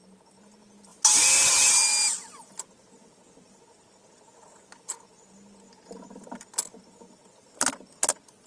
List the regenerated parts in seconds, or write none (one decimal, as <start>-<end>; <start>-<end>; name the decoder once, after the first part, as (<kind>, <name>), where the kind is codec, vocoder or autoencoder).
0.9-1.8 (vocoder, BigVGAN v2)